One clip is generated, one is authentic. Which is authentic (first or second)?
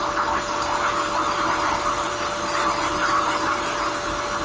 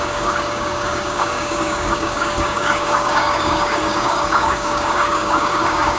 first